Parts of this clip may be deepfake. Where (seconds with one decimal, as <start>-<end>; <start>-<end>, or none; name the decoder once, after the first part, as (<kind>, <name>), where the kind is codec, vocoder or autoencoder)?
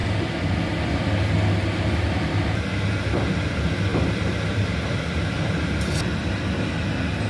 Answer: 0.0-0.6 (vocoder, BigVGAN v2); 3.9-6.4